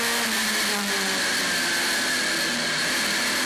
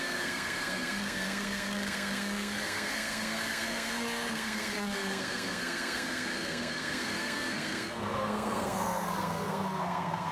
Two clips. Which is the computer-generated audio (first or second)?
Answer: second